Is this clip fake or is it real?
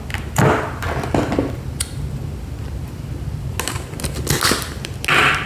real